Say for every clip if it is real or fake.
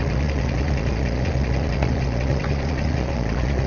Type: fake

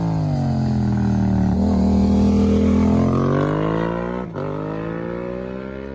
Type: real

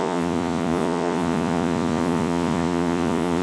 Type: fake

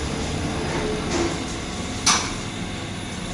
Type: real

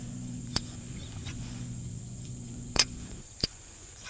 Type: fake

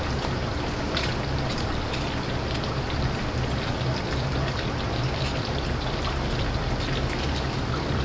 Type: real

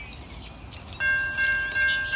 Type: real